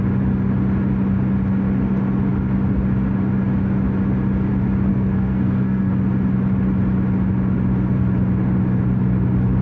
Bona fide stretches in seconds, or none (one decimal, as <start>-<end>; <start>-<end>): 0.0-4.9; 5.9-9.6